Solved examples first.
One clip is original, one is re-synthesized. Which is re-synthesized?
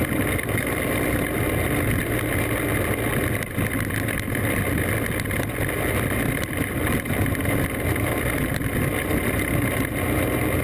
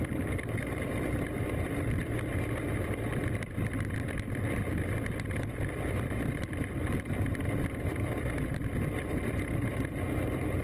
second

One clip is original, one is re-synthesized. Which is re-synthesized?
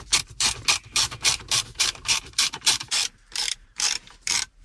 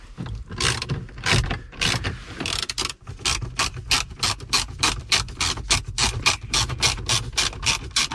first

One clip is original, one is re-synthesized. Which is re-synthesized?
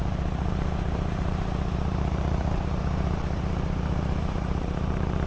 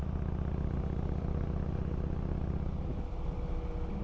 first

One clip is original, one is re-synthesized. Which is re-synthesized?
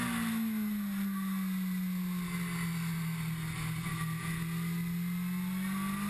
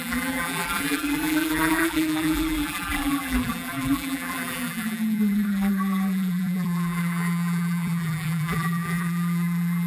second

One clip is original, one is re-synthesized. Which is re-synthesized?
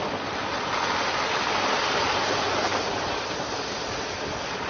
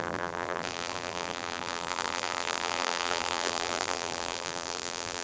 second